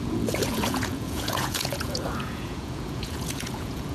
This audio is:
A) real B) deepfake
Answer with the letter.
B